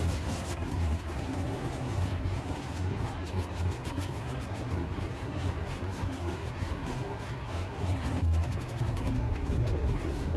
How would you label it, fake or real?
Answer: fake